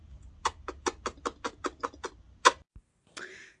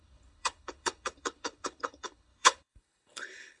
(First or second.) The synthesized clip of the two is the second